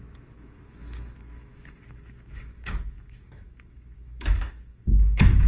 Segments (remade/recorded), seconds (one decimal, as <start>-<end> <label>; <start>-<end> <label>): 0.0-5.5 remade